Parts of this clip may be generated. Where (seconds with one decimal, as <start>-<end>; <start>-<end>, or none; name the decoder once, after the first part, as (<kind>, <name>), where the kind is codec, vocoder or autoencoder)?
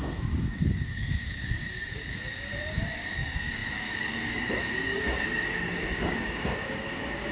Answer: 0.0-7.3 (codec, DAC)